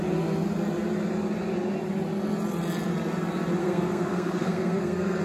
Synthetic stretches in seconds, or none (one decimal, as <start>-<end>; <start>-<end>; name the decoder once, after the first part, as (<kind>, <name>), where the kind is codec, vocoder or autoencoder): 3.6-5.2 (codec, SNAC)